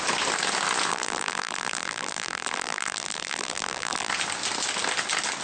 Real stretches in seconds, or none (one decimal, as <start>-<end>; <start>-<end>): 0.0-0.9; 4.1-5.4